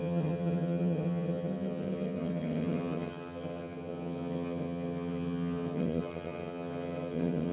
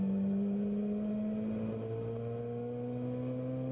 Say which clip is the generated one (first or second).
first